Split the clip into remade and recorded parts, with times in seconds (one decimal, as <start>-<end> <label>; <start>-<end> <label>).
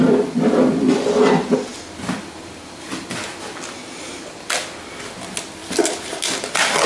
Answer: 0.0-6.9 recorded